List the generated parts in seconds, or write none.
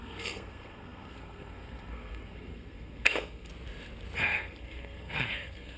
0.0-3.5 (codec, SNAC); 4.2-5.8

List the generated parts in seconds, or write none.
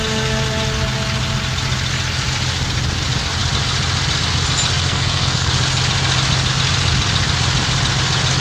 4.8-5.5 (codec, SNAC)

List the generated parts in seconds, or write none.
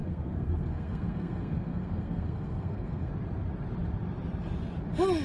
0.0-3.1 (codec, SNAC)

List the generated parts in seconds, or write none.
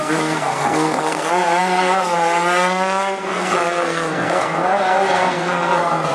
0.0-6.1 (codec, SNAC)